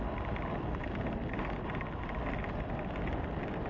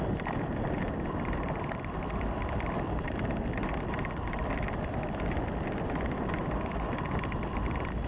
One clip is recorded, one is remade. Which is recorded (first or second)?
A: first